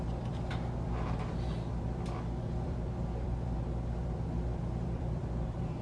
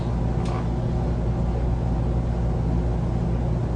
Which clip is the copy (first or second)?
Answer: first